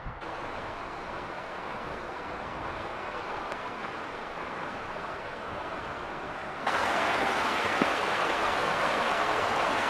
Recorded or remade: remade